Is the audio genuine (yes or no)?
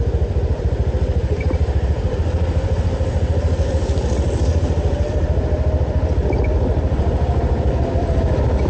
yes